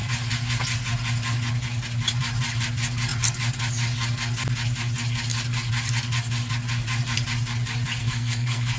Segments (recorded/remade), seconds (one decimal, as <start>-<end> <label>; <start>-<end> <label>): 0.0-8.0 recorded; 8.0-8.8 remade